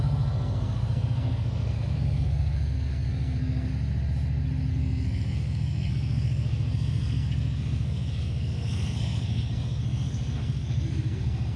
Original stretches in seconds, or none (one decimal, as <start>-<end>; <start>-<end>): 3.7-4.7